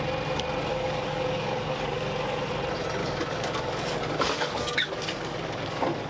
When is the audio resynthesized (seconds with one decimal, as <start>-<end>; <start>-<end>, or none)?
0.7-2.5; 3.0-6.1